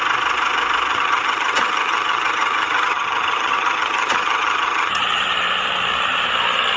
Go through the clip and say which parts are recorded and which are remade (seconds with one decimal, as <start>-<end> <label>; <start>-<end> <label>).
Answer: 0.0-0.9 recorded; 0.9-5.0 remade; 5.0-6.8 recorded